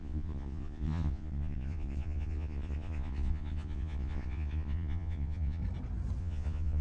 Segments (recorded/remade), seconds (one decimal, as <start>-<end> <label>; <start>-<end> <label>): 0.0-5.6 remade; 5.6-6.2 recorded; 6.2-6.8 remade